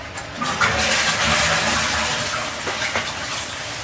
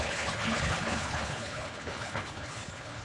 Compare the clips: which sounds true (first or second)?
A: first